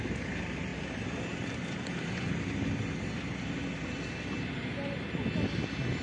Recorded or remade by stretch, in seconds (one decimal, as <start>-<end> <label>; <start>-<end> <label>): 0.0-6.0 recorded